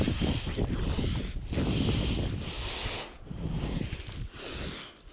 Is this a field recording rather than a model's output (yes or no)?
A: yes